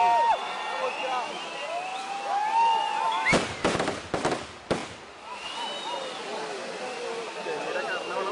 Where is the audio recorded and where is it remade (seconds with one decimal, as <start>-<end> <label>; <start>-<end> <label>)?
0.0-8.3 recorded